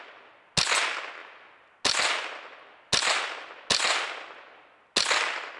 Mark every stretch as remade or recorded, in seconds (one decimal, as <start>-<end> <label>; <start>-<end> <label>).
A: 0.0-5.6 recorded